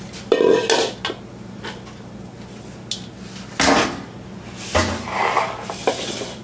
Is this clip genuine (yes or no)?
yes